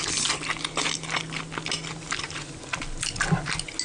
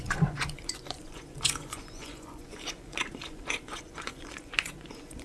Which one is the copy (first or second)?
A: second